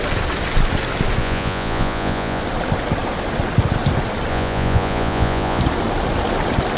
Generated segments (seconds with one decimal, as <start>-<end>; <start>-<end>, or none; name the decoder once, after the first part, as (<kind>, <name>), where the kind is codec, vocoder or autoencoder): 1.2-2.4 (vocoder, Vocos); 4.3-5.6